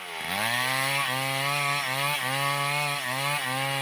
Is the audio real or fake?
real